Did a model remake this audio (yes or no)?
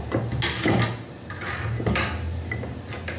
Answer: no